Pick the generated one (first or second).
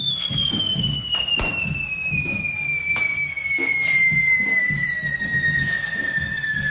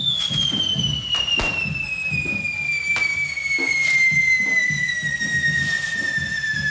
first